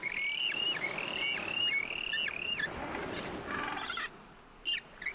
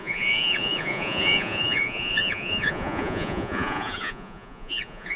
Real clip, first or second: first